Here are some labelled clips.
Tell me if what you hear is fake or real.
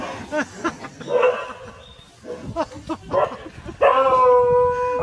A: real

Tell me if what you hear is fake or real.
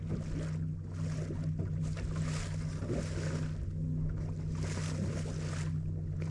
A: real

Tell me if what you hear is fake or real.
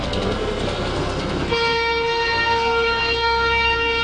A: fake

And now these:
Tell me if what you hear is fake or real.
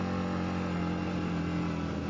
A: real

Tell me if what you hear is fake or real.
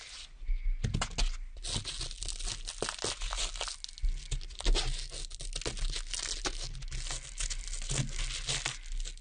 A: real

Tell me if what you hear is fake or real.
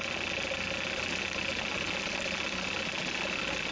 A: real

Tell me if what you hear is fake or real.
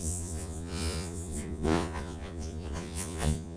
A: fake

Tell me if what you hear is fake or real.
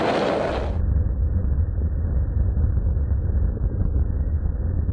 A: real